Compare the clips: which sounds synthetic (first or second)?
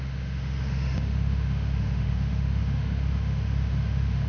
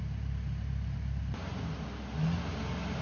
first